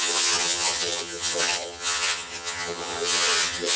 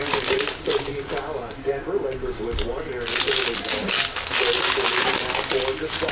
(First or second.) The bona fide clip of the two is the second